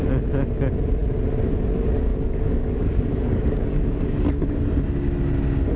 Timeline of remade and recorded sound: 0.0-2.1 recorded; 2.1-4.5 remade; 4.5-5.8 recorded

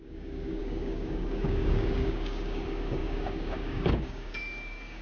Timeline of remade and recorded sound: 0.0-5.0 remade

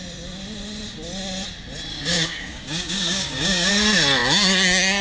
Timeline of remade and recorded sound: 0.0-1.9 recorded; 1.9-3.7 remade; 3.7-5.0 recorded